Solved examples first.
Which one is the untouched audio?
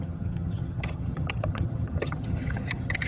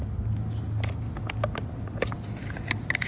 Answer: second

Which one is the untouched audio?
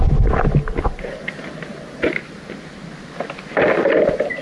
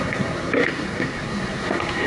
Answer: first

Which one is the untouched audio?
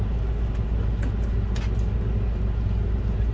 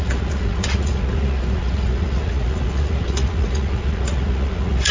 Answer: first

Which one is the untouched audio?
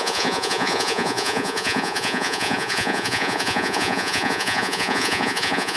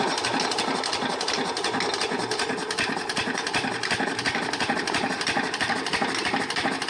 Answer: second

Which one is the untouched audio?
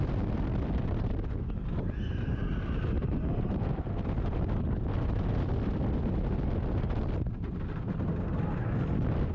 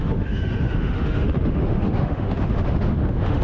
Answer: first